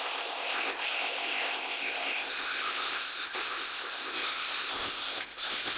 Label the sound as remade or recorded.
remade